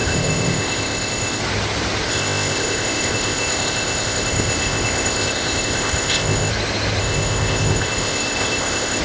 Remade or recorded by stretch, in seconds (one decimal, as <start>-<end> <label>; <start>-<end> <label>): 0.0-1.4 remade; 1.4-2.1 recorded; 2.1-6.5 remade; 6.5-7.0 recorded; 7.0-9.0 remade

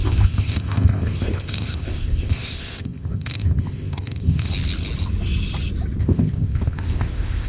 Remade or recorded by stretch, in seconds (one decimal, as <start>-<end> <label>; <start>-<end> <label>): 0.0-4.5 remade; 4.5-6.0 recorded; 6.0-7.5 remade

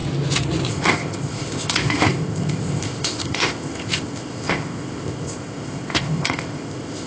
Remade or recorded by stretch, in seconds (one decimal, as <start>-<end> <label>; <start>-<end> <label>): 0.0-0.7 recorded; 0.7-7.1 remade

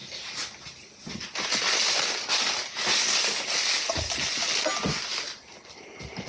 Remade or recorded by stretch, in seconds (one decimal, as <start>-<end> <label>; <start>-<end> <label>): 0.0-6.3 recorded

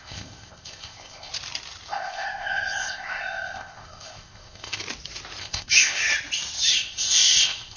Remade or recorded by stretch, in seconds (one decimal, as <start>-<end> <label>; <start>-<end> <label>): 0.0-1.3 remade; 1.3-1.9 recorded; 1.9-4.8 remade; 4.8-5.4 recorded; 5.4-6.0 remade; 6.0-6.7 recorded; 6.7-7.8 remade

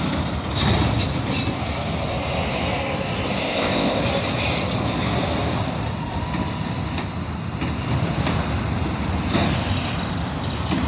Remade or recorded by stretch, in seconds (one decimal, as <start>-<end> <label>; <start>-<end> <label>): 0.0-3.4 recorded; 3.4-4.0 remade; 4.0-10.9 recorded